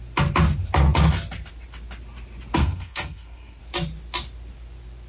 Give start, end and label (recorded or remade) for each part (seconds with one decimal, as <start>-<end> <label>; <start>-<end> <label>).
0.0-2.6 recorded; 2.6-3.6 remade; 3.6-5.1 recorded